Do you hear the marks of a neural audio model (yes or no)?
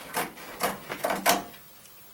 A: no